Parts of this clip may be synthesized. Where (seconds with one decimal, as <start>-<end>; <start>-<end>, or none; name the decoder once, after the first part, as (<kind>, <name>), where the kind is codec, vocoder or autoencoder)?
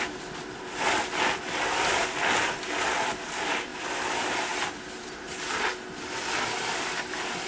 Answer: none